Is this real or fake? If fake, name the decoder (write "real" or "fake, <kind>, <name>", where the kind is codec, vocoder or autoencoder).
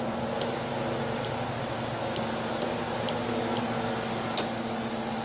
real